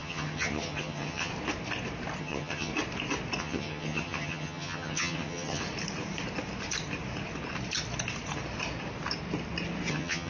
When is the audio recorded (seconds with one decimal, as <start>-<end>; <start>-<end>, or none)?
1.3-2.2; 2.7-3.4; 5.6-9.9